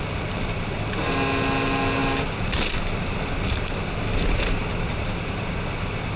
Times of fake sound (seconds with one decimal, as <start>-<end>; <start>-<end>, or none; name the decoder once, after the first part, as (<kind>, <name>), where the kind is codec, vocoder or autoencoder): none